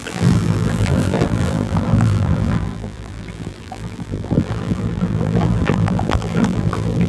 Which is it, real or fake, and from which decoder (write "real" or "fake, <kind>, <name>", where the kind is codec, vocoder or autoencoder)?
fake, vocoder, BigVGAN v2